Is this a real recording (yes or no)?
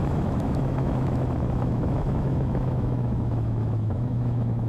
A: no